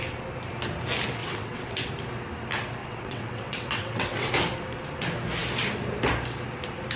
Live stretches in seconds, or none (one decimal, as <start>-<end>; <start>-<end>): 0.0-1.2; 1.9-2.8; 4.3-7.0